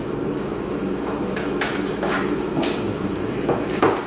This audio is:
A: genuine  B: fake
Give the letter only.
B